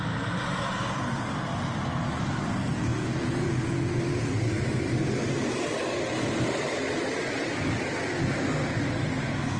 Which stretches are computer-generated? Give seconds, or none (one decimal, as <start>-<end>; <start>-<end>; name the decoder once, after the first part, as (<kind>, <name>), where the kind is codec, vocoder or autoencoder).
2.9-3.6 (vocoder, Vocos)